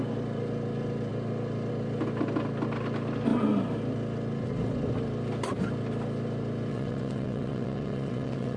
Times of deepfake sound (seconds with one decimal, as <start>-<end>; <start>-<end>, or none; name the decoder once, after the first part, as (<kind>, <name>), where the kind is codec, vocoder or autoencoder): 6.7-8.6 (vocoder, WaveNeXt)